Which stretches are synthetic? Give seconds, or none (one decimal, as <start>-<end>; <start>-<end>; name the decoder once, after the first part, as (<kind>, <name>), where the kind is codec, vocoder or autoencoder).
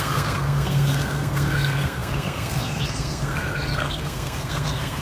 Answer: 0.0-5.0 (codec, SNAC)